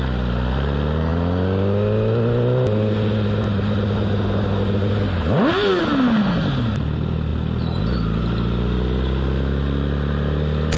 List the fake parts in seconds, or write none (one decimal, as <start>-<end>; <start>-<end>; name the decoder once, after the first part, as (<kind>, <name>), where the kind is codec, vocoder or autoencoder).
none